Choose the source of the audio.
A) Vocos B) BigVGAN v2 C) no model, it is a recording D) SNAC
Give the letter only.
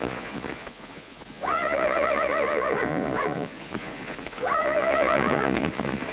A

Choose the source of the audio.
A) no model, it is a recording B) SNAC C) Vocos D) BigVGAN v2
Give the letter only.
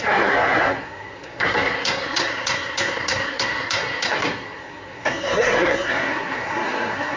B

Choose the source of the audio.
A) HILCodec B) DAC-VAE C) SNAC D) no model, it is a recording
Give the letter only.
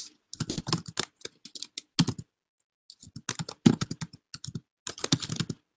D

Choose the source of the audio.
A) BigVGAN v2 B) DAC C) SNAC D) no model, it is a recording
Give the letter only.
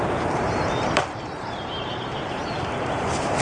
A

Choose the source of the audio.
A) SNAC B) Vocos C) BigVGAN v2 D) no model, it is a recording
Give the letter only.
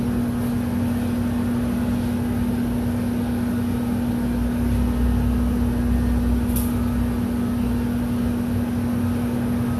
D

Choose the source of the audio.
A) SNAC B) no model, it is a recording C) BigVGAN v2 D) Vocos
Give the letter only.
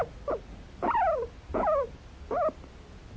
B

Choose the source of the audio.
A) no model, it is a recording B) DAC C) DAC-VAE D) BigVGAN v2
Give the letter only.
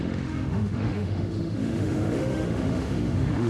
C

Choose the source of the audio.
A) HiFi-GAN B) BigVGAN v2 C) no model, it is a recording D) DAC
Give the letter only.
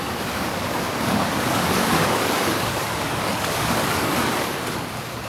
D